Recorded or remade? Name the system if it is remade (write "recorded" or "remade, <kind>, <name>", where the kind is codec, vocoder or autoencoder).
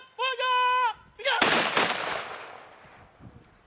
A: recorded